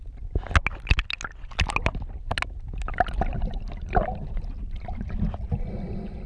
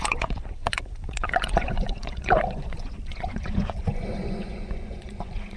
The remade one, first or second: second